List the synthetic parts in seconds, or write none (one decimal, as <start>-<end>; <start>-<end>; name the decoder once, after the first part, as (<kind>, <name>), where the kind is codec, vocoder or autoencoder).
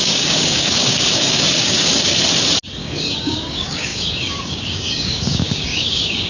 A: 0.0-2.1 (codec, DAC); 2.8-6.3